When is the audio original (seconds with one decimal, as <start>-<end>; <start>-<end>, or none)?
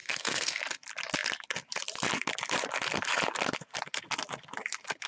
0.6-5.1